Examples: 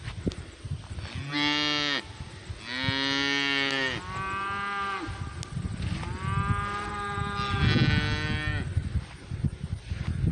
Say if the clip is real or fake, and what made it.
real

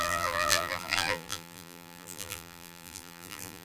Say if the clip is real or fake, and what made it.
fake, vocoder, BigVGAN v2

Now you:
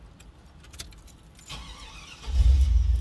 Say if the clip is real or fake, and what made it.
real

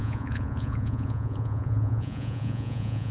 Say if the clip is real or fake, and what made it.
fake, vocoder, Vocos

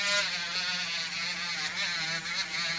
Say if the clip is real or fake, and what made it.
real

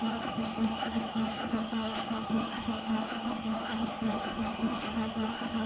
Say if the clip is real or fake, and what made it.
fake, codec, SNAC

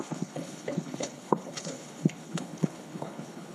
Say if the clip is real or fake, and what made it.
fake, codec, HILCodec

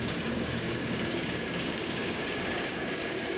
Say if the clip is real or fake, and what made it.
fake, codec, DAC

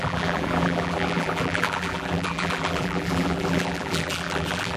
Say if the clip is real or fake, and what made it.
fake, vocoder, BigVGAN v2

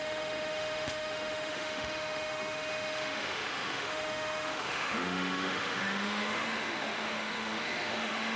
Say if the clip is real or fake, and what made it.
fake, autoencoder, DAC-VAE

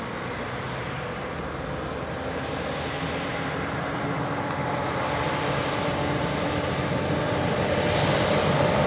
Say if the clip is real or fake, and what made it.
real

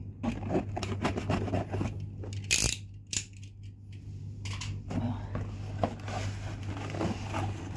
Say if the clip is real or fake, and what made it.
real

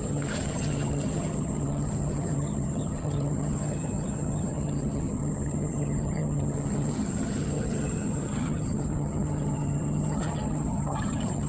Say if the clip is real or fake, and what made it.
fake, vocoder, HiFi-GAN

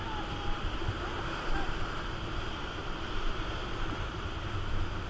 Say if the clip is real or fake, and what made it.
real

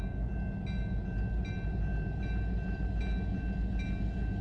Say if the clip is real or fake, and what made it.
real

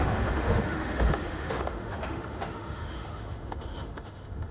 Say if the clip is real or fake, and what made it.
fake, autoencoder, DAC-VAE